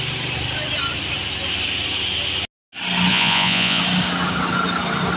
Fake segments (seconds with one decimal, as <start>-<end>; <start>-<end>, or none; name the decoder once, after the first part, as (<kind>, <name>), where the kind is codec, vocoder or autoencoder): 3.1-3.8 (vocoder, Vocos)